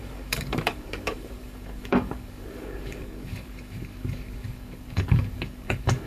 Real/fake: fake